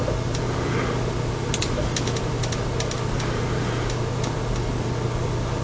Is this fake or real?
real